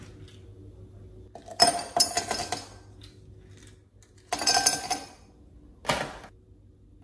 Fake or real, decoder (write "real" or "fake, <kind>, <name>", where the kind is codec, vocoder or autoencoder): real